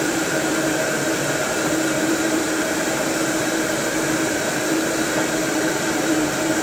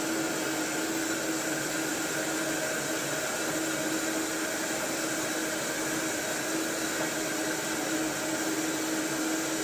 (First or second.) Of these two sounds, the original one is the second